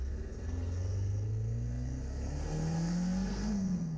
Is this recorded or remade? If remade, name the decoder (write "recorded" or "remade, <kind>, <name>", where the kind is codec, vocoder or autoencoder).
remade, codec, SNAC